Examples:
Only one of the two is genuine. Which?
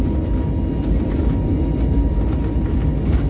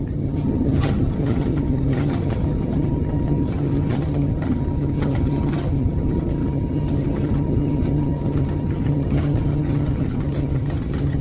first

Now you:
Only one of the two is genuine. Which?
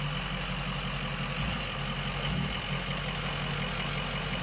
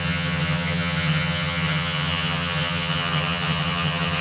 first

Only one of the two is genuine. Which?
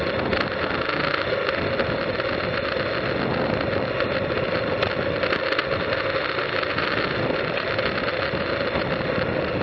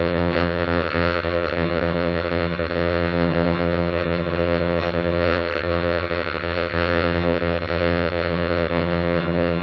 first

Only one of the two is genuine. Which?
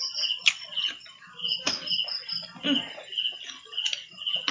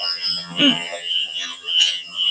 first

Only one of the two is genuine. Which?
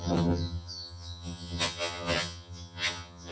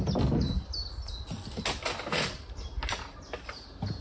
second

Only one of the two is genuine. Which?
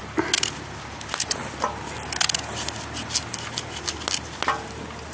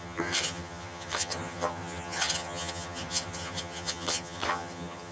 first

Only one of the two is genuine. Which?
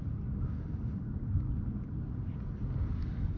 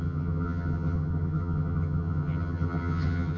first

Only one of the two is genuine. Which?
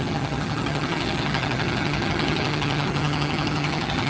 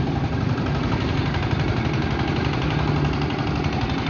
second